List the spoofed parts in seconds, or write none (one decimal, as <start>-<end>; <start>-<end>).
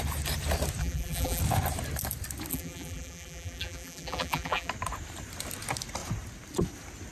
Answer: 0.8-1.4; 2.5-4.7